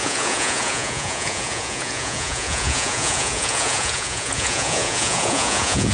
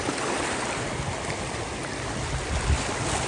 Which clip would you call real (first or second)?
second